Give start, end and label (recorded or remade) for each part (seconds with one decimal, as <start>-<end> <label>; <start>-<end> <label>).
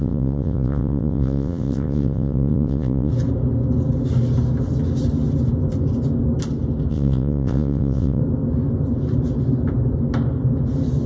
0.0-3.1 remade; 3.1-6.9 recorded; 6.9-8.2 remade; 8.2-11.1 recorded